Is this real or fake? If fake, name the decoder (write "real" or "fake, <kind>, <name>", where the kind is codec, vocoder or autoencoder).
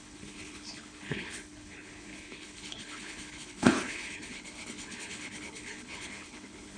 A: fake, codec, HILCodec